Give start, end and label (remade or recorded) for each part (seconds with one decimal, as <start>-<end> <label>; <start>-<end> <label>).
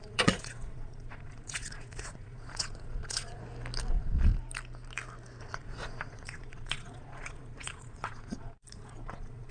0.0-3.4 remade; 3.4-3.9 recorded; 3.9-4.3 remade; 4.3-5.4 recorded; 5.4-9.5 remade